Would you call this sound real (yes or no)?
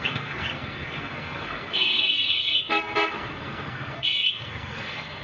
no